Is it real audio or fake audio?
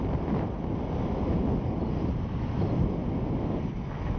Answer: real